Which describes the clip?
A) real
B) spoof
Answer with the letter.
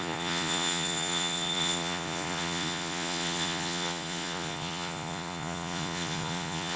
B